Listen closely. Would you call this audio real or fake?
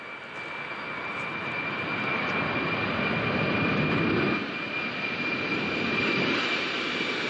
real